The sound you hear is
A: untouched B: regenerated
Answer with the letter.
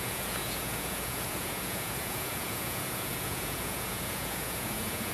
B